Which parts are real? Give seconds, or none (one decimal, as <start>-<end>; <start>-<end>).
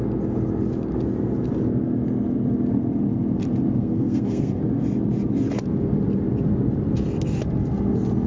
0.0-3.8; 4.6-8.3